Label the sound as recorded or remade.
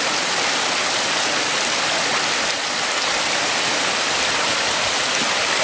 recorded